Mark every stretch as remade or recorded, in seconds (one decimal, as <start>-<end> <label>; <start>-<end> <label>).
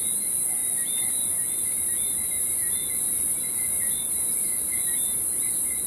0.0-5.9 recorded